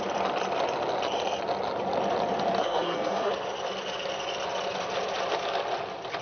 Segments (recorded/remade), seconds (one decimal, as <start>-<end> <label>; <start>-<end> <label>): 0.0-2.6 recorded; 2.6-3.3 remade; 3.3-6.2 recorded